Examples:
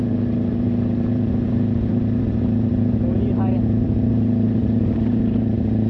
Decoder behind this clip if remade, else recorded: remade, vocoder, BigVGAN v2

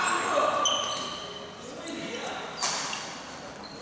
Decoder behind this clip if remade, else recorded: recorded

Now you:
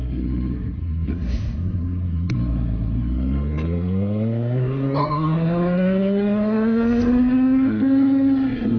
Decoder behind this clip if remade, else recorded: remade, codec, SNAC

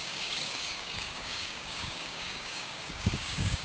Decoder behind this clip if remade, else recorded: remade, codec, DAC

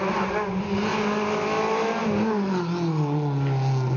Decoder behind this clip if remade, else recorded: recorded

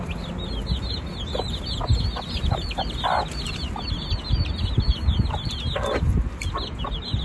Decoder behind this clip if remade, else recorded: recorded